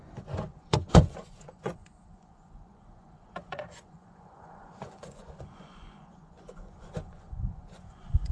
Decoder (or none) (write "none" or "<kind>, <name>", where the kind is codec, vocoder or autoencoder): vocoder, Vocos